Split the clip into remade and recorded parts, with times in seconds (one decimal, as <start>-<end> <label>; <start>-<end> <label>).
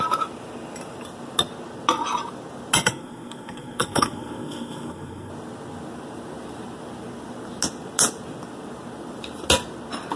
0.0-2.9 recorded; 2.9-5.3 remade; 5.3-10.2 recorded